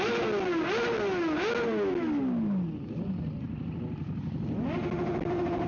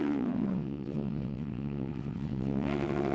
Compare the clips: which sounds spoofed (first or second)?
second